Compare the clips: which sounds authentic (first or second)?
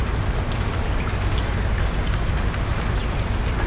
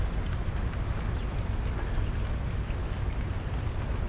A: first